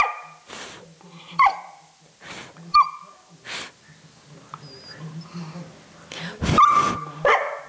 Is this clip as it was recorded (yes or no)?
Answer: yes